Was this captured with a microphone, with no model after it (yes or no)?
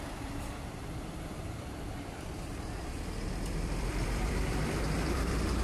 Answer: no